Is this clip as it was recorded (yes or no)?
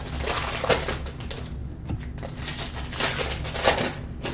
yes